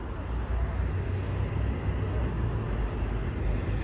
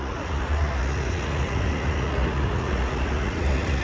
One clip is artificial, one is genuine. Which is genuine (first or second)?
first